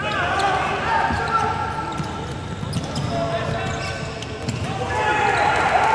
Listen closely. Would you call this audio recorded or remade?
recorded